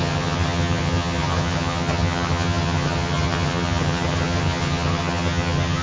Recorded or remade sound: remade